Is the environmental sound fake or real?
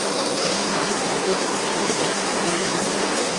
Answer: fake